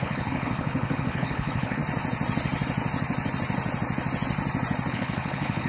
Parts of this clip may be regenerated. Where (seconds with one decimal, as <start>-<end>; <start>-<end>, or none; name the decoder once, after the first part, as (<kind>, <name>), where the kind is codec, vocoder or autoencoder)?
0.0-1.8 (codec, HILCodec); 4.9-5.7